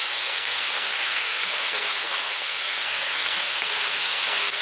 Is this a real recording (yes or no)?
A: no